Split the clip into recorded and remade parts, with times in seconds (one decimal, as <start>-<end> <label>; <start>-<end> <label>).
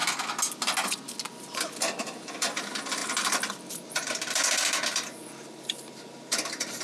0.0-2.0 recorded; 2.0-6.8 remade